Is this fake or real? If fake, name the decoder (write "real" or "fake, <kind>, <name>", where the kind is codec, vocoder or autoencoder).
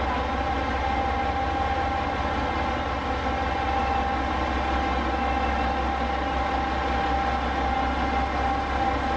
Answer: real